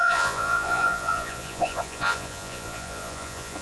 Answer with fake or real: fake